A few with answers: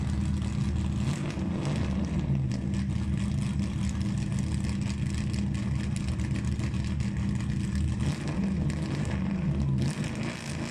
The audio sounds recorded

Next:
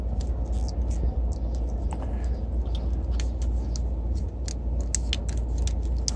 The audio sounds recorded